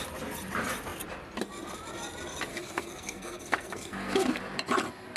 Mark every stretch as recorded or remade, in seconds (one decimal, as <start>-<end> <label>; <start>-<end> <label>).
0.0-2.5 recorded; 2.5-4.4 remade; 4.4-5.2 recorded